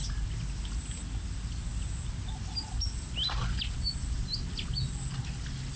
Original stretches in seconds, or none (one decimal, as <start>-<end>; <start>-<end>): 0.0-5.8

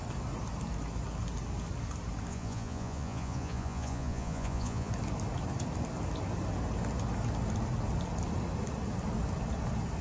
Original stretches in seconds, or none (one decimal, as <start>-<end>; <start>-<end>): 0.0-2.3; 4.9-10.0

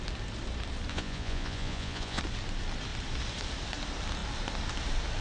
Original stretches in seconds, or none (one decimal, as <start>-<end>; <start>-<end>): 0.0-0.9; 2.2-5.2

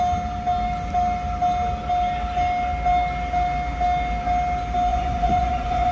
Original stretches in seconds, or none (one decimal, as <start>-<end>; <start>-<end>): 0.0-4.9